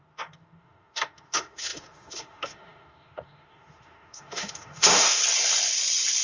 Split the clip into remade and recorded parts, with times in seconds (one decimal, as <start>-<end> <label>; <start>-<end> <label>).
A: 0.0-5.2 remade; 5.2-6.2 recorded